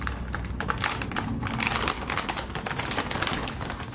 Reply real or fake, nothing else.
real